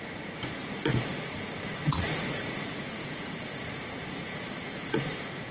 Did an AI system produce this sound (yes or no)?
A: yes